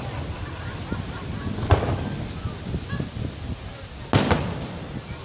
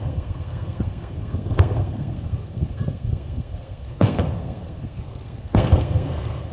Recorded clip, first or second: first